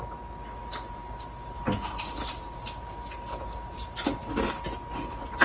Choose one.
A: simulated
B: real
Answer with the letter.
B